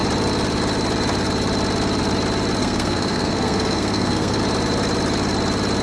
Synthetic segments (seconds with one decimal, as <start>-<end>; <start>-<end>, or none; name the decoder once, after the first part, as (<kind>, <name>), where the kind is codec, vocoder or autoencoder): 2.6-4.4 (codec, SNAC)